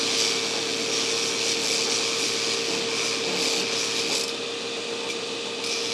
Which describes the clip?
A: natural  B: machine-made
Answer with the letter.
A